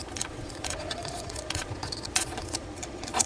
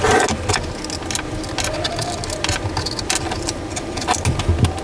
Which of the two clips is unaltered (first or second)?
second